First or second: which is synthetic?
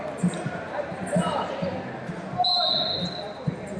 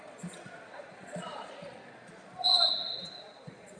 second